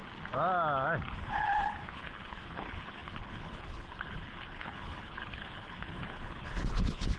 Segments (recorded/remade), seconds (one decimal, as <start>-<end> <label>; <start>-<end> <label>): 0.0-1.1 recorded; 1.1-7.2 remade